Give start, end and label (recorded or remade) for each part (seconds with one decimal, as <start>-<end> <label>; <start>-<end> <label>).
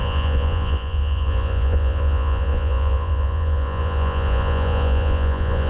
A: 0.0-5.7 remade